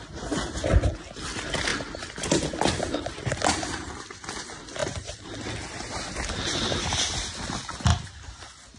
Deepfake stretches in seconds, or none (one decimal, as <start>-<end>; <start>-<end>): none